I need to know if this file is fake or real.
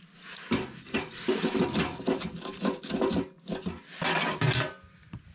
real